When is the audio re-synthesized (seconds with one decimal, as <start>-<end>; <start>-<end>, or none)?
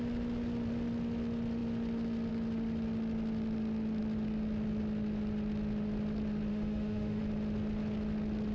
6.5-7.2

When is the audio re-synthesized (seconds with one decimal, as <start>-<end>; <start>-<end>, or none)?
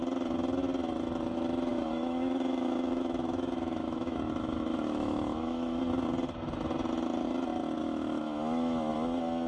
1.7-5.8; 7.8-8.9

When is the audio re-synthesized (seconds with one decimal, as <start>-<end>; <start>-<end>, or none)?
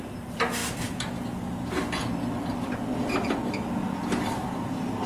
none